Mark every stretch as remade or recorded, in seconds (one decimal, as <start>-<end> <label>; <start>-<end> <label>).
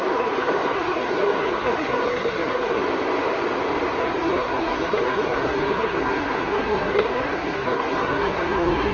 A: 0.0-2.8 remade; 2.8-4.0 recorded; 4.0-8.9 remade